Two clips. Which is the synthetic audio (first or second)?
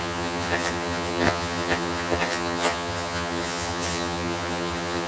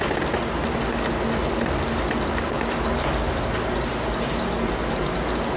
first